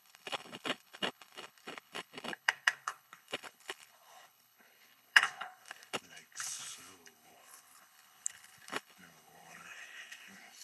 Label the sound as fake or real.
fake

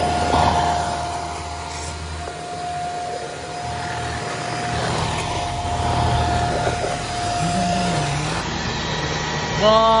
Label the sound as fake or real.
real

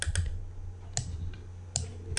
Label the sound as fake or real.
real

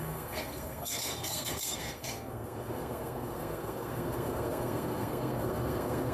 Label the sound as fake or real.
fake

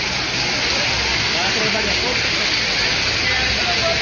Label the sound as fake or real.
real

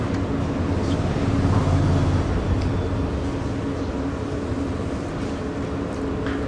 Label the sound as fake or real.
real